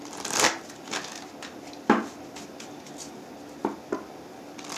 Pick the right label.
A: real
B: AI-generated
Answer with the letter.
A